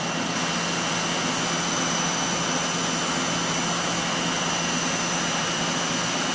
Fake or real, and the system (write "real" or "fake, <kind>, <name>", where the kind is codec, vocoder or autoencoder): real